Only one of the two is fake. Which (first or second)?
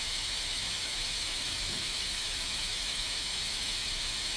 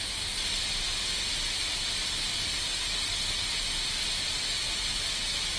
first